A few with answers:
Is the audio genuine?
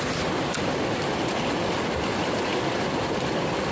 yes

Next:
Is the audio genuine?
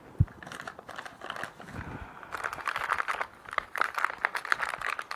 yes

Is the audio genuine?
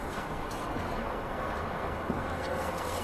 no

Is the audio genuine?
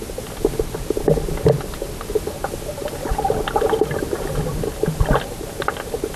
yes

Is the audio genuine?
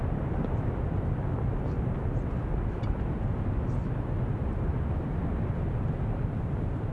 yes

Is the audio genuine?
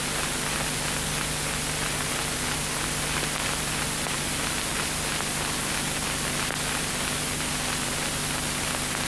yes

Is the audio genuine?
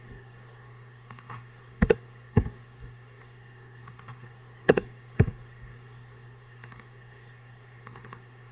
no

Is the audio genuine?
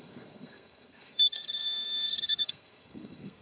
no